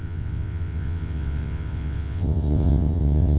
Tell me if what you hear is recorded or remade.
remade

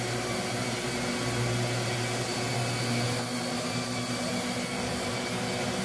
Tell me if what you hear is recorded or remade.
recorded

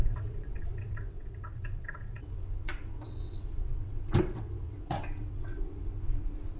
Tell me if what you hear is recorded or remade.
remade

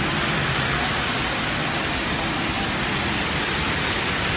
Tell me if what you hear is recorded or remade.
recorded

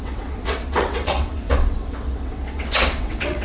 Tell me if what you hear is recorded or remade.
remade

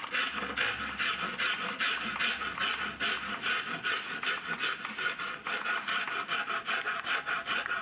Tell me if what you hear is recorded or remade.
recorded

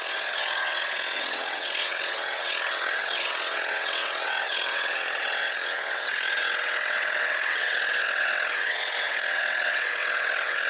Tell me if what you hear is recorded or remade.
remade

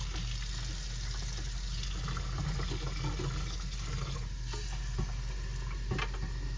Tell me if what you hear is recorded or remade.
recorded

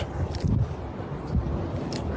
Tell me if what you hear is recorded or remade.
recorded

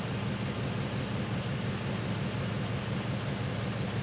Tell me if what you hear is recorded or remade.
recorded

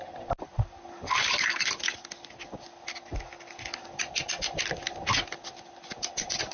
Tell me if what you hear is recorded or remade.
recorded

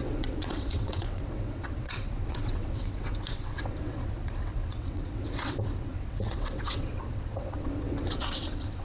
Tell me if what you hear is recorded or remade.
remade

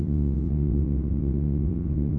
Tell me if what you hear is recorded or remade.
remade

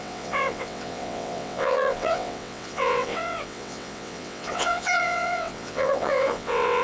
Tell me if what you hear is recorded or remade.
remade